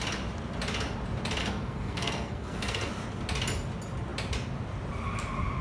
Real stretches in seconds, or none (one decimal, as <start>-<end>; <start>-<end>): 0.0-1.4; 2.9-5.6